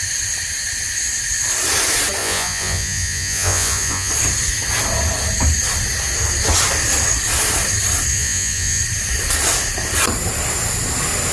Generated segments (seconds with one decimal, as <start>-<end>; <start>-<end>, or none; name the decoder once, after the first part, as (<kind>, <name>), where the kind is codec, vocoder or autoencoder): 2.2-4.1 (vocoder, Vocos); 8.1-8.8